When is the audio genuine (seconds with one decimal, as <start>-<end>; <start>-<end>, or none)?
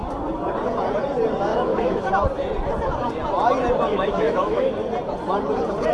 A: 0.0-1.5; 2.1-3.9; 4.7-5.9